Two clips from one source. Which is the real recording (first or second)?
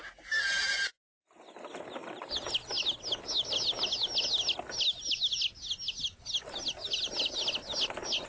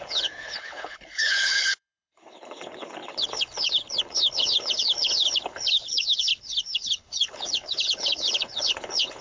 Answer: first